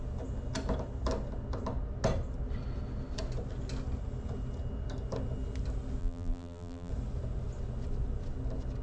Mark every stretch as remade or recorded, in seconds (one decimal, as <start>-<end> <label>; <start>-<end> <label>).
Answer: 0.0-6.0 recorded; 6.0-6.9 remade; 6.9-8.8 recorded